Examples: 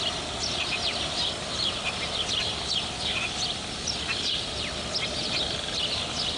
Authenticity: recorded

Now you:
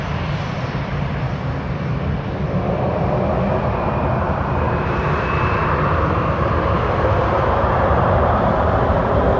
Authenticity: remade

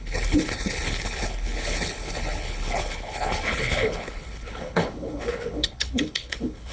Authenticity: remade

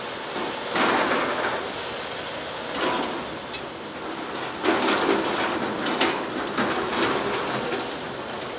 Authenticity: recorded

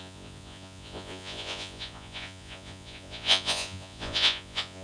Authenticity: remade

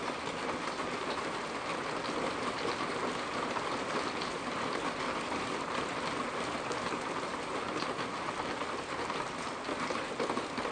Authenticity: recorded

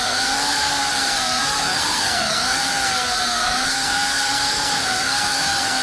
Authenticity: remade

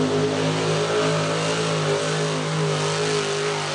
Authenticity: recorded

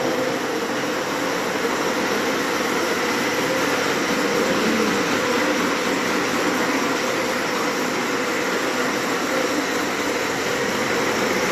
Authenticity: recorded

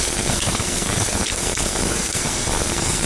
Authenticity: remade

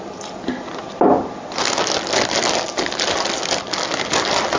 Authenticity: recorded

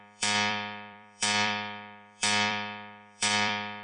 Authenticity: remade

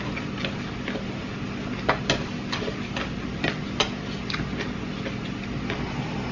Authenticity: recorded